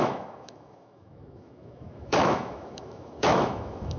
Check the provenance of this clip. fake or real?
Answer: fake